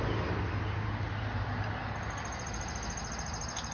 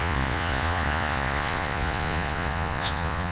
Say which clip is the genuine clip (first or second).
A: first